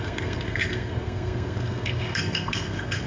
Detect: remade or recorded remade